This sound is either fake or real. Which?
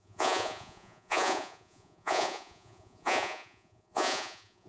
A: fake